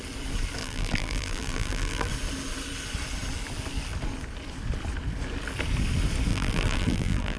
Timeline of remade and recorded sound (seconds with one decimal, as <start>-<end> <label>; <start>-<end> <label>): 0.0-0.6 recorded; 0.6-2.1 remade; 2.1-6.3 recorded; 6.3-7.4 remade